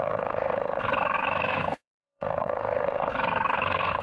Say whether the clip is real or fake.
fake